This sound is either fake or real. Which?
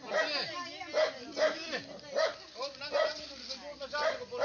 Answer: real